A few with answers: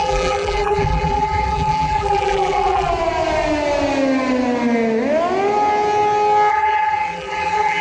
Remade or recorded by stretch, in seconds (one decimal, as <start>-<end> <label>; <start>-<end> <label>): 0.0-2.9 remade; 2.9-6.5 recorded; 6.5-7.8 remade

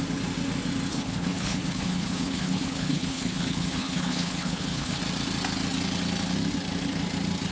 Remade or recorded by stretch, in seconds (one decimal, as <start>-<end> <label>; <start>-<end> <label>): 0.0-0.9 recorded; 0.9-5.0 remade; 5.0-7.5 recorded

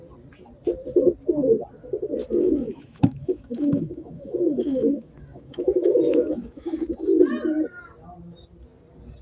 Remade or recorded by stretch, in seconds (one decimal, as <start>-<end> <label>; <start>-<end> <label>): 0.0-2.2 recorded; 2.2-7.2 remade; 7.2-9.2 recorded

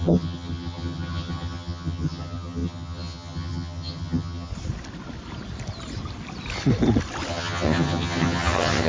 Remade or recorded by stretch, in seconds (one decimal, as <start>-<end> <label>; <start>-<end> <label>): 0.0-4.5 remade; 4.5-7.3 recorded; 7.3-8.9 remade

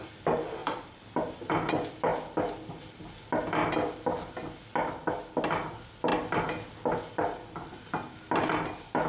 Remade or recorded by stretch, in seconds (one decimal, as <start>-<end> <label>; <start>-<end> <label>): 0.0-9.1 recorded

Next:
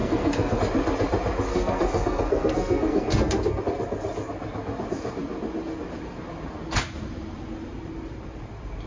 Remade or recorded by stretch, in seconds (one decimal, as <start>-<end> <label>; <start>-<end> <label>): 0.0-0.6 remade; 0.6-1.5 recorded; 1.5-3.6 remade; 3.6-8.9 recorded

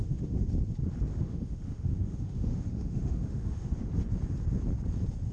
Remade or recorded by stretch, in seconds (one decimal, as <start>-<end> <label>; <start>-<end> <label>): 0.0-0.5 remade; 0.5-1.1 recorded; 1.1-3.9 remade; 3.9-5.3 recorded